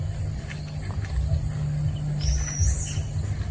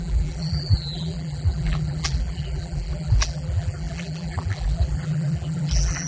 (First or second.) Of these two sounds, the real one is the first